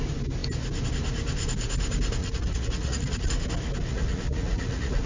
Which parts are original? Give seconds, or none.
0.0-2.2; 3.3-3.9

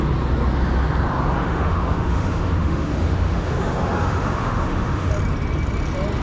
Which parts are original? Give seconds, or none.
0.0-1.4; 5.1-6.2

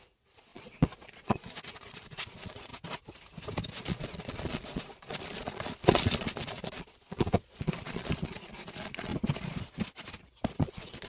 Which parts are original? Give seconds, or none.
2.7-3.8; 9.1-10.6

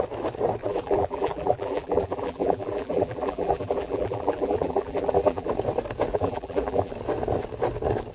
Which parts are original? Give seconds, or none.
0.0-0.6; 5.5-6.1; 6.9-8.1

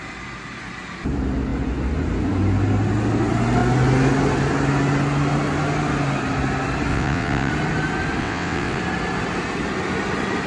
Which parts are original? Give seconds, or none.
0.0-6.9; 7.5-8.2; 8.8-10.5

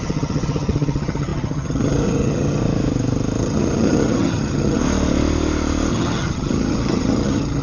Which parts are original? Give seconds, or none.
2.6-3.4; 4.8-5.9